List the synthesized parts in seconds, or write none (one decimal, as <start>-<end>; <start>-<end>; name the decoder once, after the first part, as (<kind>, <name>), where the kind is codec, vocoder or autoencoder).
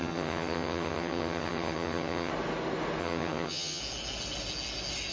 0.0-2.3 (vocoder, HiFi-GAN); 3.0-3.8